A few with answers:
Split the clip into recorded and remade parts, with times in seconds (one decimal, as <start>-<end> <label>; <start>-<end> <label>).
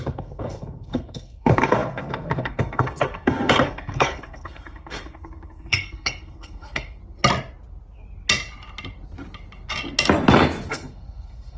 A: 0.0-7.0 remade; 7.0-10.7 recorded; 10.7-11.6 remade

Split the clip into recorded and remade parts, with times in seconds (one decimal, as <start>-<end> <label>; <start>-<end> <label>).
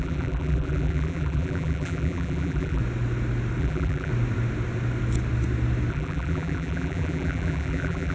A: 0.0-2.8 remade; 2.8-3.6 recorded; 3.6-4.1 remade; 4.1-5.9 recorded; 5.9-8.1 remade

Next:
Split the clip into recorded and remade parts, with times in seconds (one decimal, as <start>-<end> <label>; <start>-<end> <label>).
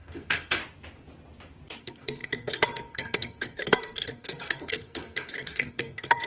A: 0.0-0.6 remade; 0.6-1.8 recorded; 1.8-6.3 remade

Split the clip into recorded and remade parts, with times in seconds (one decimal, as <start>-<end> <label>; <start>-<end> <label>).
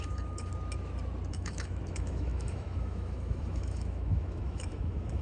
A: 0.0-0.5 remade; 0.5-1.3 recorded; 1.3-5.2 remade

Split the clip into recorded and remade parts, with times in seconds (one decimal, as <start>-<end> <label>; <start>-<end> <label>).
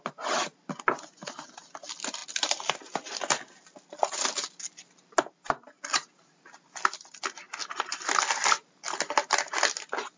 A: 0.0-10.2 recorded